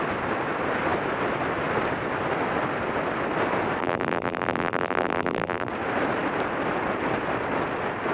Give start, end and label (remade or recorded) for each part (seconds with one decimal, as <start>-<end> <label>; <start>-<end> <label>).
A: 0.0-3.8 recorded; 3.8-5.7 remade; 5.7-8.1 recorded